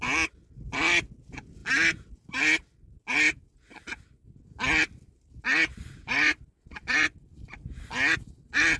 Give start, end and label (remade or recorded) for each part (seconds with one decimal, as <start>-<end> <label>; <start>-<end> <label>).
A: 0.0-4.8 recorded; 4.8-7.8 remade; 7.8-8.8 recorded